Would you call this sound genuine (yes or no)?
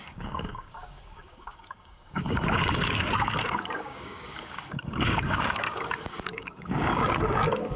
no